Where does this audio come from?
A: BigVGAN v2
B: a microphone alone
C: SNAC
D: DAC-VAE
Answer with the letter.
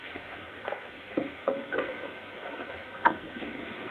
C